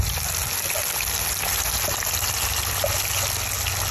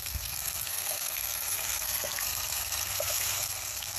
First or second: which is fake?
second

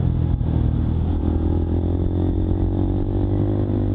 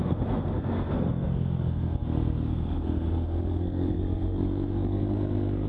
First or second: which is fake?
second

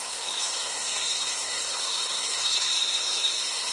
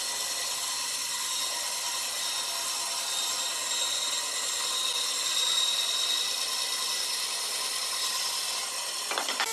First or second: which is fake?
first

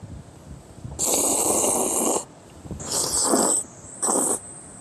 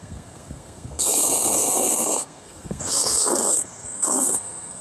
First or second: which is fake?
second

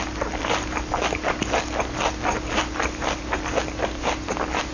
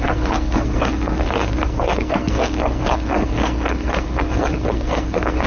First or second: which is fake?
second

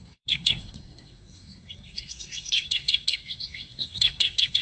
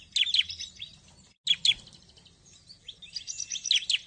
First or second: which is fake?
first